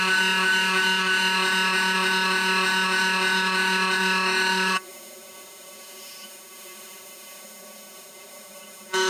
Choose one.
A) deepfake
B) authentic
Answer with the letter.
A